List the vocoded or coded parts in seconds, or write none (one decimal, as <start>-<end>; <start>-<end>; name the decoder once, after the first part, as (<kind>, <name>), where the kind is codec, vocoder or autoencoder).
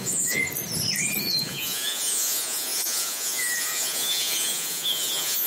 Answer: 0.0-0.4 (vocoder, Vocos); 1.2-5.5